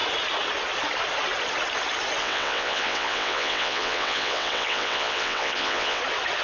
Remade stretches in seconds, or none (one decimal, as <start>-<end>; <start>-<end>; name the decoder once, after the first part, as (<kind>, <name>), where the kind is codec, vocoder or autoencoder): 2.2-6.0 (vocoder, WaveNeXt)